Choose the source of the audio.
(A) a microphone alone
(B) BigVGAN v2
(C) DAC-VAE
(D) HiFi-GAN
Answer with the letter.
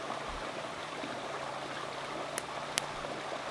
A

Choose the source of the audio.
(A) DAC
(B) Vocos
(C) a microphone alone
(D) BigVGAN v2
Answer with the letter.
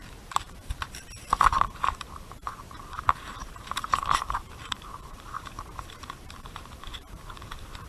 D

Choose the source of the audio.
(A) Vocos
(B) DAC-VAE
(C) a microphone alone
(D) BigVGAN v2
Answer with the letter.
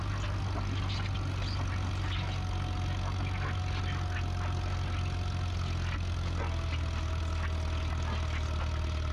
C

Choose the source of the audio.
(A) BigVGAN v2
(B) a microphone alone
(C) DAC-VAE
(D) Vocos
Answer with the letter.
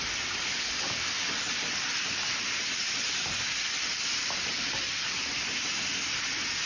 A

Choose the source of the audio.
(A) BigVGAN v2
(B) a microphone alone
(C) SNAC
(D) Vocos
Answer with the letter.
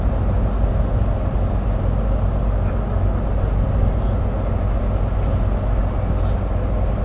B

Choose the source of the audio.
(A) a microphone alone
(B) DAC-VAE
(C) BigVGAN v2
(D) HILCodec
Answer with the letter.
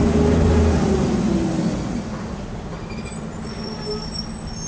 A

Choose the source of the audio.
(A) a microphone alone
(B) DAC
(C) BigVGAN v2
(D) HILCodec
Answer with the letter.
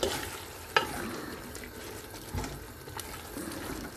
A